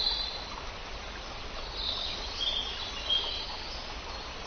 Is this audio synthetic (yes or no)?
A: no